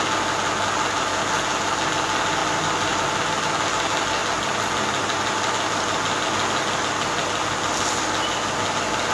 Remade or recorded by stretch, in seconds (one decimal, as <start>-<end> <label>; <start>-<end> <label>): 0.0-9.1 recorded